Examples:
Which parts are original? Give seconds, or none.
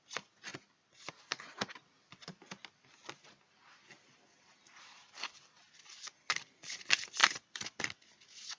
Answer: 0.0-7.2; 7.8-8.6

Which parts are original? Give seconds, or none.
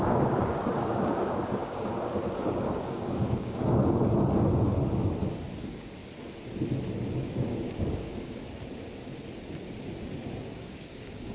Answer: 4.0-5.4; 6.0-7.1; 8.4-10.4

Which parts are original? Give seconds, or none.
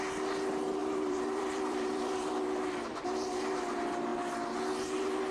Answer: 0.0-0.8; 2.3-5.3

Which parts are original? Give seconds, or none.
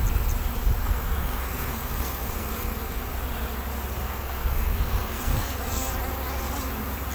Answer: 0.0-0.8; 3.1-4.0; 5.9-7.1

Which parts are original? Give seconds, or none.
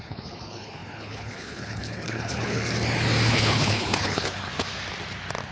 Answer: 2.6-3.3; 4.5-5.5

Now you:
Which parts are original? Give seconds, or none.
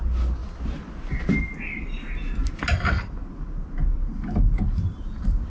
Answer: 0.0-5.5